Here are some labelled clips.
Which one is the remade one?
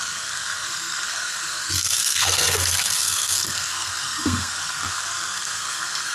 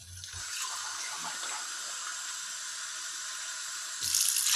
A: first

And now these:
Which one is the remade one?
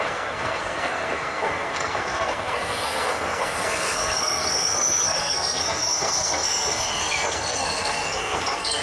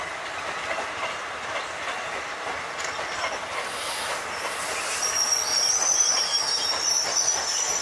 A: first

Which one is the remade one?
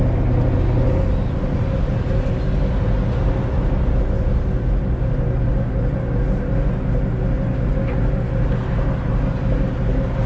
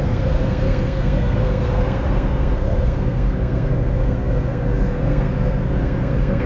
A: second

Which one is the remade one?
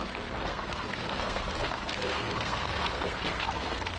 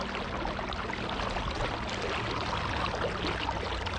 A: first